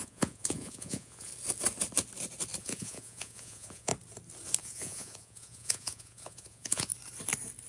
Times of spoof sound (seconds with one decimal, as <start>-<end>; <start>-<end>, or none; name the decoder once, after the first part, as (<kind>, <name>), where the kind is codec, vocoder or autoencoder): 0.0-1.3 (vocoder, Vocos); 2.6-3.9; 4.6-6.9